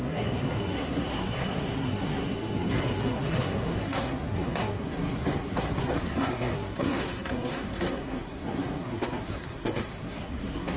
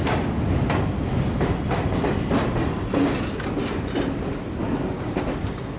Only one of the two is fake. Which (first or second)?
first